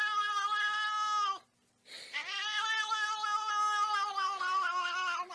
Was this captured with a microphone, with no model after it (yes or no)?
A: yes